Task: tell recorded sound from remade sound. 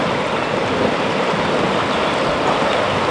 recorded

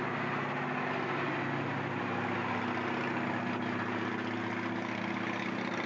recorded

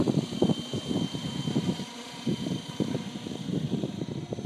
remade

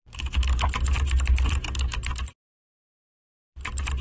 remade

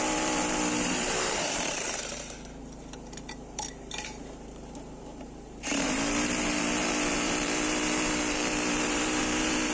remade